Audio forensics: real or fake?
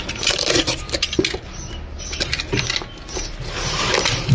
real